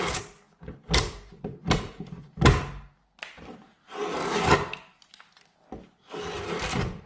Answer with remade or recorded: recorded